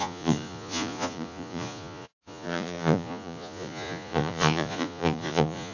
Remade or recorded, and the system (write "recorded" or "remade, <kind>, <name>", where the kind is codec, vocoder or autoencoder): remade, vocoder, Vocos